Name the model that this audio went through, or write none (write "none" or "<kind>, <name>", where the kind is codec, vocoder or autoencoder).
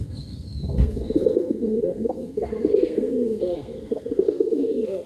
codec, SNAC